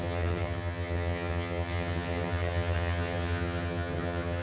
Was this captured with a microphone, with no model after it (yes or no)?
no